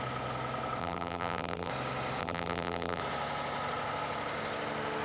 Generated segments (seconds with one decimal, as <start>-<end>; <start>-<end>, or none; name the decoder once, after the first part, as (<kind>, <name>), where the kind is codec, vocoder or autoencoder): 0.8-1.7 (vocoder, BigVGAN v2); 2.2-3.0